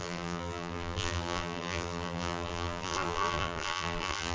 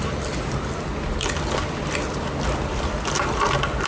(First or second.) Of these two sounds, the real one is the second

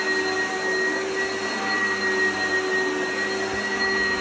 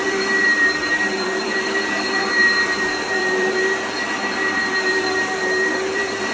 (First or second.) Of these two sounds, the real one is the first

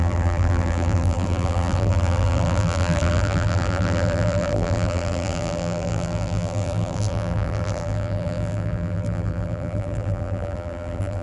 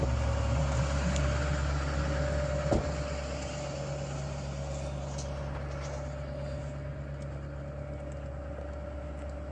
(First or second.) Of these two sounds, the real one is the second